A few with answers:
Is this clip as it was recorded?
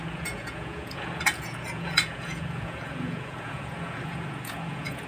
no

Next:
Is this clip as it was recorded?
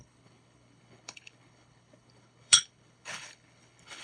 no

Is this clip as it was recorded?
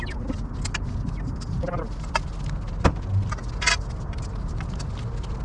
yes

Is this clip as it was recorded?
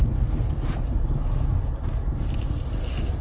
yes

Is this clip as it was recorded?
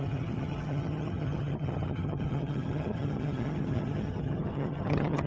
no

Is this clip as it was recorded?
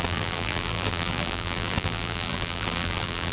no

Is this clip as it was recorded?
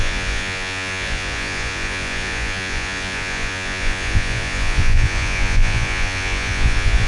no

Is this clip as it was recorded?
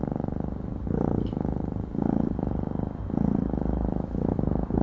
yes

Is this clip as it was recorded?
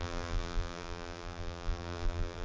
no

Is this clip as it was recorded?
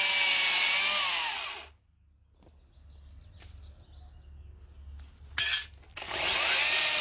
yes